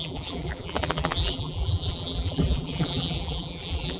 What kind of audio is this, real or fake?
fake